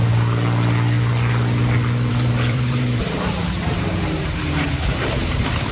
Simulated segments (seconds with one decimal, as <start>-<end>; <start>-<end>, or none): 2.1-5.7